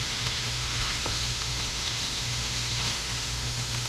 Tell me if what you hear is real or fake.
fake